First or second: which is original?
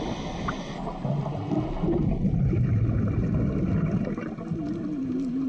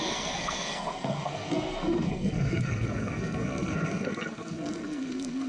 first